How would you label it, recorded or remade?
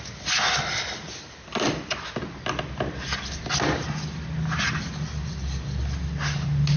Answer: recorded